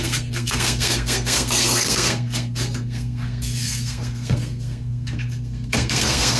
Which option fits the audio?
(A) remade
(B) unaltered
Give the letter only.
A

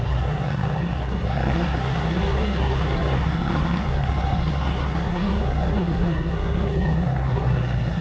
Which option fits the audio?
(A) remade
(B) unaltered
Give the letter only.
A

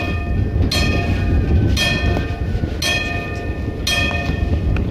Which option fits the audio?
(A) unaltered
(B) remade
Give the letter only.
A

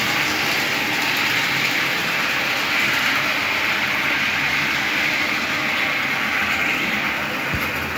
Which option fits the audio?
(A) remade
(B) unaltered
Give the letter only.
B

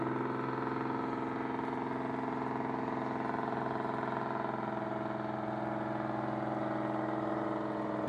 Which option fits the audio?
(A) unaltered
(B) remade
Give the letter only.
A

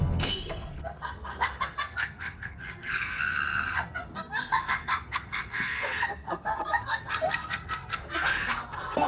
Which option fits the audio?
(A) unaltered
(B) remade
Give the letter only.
B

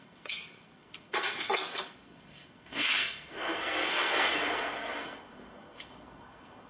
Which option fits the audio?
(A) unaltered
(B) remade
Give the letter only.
B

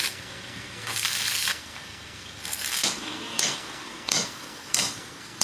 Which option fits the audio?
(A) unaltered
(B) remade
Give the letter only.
B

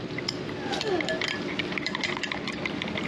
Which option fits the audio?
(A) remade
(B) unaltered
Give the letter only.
B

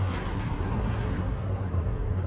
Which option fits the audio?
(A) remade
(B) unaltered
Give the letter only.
A